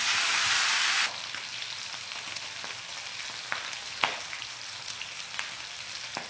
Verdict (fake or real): real